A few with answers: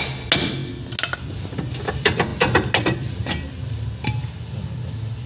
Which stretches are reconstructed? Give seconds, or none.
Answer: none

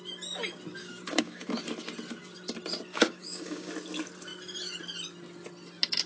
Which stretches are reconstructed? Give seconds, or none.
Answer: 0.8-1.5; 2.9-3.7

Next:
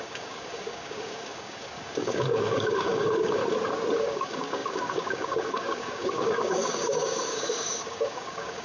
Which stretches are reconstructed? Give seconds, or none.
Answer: 0.0-3.4; 4.0-8.6

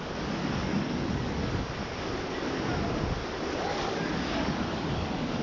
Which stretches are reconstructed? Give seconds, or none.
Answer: 0.0-1.8; 3.5-5.4